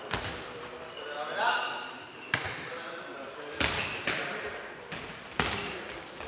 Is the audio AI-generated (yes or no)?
no